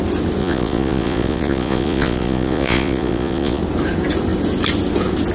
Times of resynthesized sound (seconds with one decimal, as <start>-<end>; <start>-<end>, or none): 0.4-3.6